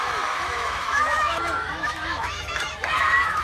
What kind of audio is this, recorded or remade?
remade